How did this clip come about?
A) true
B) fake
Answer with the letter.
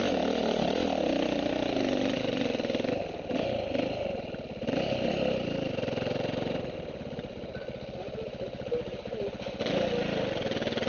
A